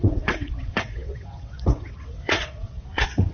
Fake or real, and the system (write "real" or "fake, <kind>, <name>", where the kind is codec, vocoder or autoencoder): fake, vocoder, WaveNeXt